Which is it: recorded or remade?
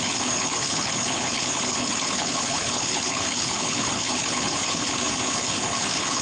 remade